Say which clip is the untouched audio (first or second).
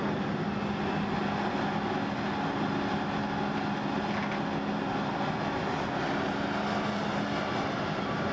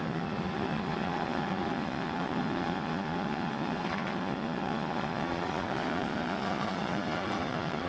first